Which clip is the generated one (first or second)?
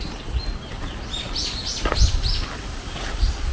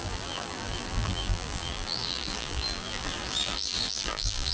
second